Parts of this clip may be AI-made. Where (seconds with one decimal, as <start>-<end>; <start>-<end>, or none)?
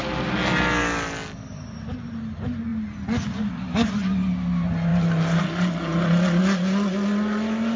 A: none